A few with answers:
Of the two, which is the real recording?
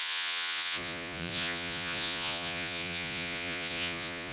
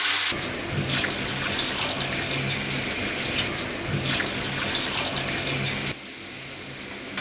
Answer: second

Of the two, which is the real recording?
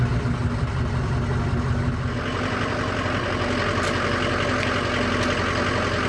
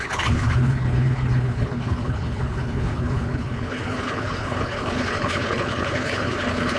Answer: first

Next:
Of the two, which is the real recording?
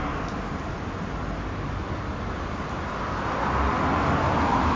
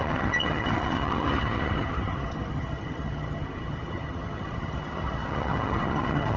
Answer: first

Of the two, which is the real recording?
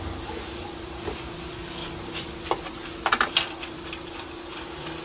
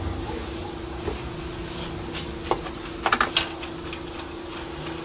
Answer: second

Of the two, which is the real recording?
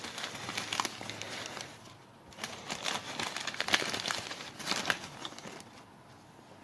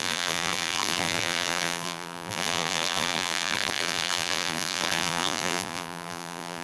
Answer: first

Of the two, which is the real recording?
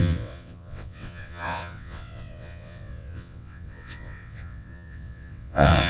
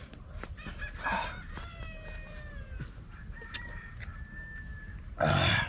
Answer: second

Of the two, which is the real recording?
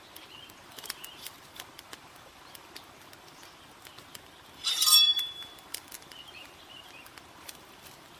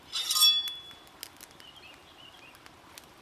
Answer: second